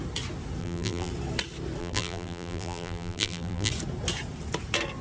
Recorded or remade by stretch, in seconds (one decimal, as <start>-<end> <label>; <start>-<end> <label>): 0.0-0.6 recorded; 0.6-1.1 remade; 1.1-1.8 recorded; 1.8-3.7 remade; 3.7-5.0 recorded